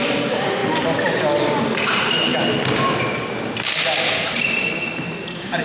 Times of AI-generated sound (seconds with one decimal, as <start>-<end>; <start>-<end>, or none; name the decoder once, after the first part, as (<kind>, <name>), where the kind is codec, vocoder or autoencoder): none